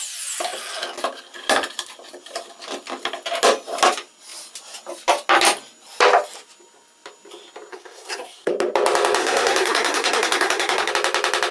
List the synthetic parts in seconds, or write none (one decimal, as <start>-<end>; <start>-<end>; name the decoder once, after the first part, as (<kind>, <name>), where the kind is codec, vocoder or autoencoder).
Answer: 7.7-8.5 (codec, SNAC); 9.2-10.9